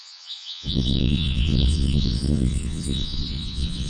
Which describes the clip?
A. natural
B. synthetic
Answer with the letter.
B